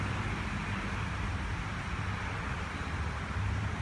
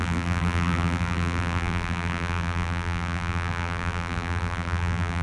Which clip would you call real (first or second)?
first